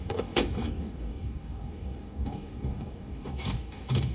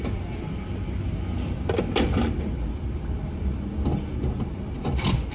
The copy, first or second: first